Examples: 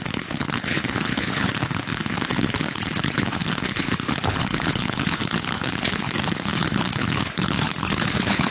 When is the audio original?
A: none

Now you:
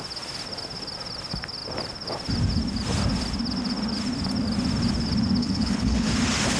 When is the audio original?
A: 0.0-5.4; 6.1-6.6